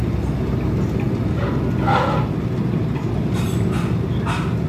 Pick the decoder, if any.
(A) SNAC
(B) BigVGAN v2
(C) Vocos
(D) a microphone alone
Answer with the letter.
D